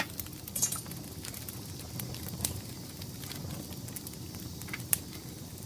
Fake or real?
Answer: real